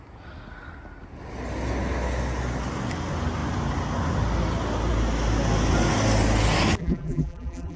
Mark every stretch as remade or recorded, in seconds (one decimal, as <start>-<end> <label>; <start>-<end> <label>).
0.0-6.8 recorded; 6.8-7.8 remade